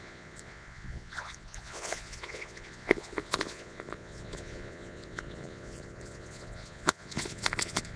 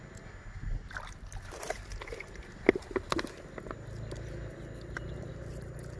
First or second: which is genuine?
second